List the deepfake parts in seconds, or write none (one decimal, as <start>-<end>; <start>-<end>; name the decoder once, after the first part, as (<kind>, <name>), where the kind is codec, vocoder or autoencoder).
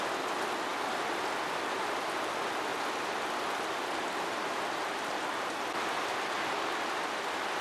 2.7-4.1 (vocoder, BigVGAN v2)